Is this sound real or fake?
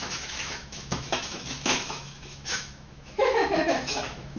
fake